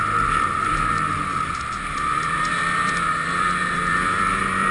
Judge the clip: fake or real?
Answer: fake